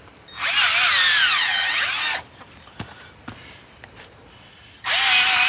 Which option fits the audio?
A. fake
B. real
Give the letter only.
B